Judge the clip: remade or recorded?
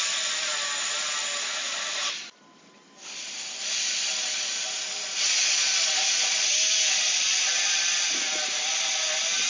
recorded